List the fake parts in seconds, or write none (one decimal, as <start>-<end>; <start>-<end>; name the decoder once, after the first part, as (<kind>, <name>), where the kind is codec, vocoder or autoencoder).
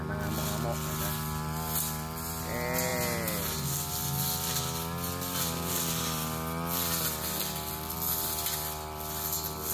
none